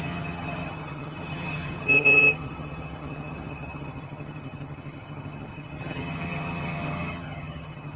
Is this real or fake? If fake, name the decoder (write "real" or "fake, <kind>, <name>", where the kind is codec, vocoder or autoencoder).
fake, vocoder, HiFi-GAN